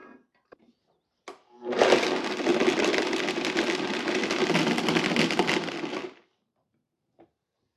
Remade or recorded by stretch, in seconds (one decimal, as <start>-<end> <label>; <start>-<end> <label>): 0.0-7.8 recorded